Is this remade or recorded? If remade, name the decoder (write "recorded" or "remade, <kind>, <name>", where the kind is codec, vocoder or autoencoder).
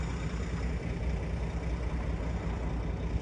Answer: recorded